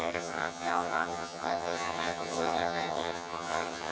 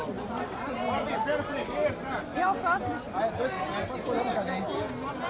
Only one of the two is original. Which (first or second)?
second